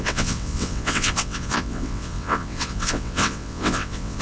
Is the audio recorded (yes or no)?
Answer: no